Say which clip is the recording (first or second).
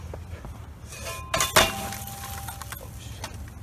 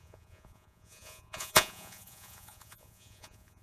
first